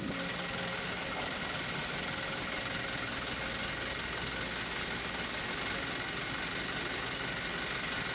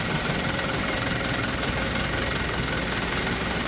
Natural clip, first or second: first